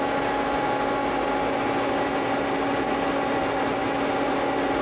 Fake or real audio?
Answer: real